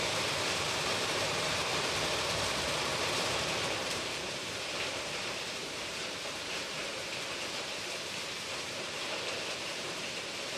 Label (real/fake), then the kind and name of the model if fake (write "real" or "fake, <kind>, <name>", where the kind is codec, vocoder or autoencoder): fake, vocoder, BigVGAN v2